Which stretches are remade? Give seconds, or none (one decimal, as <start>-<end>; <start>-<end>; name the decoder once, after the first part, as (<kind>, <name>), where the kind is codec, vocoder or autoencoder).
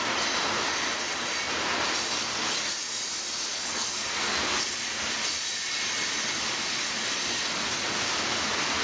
3.5-4.3 (codec, SNAC)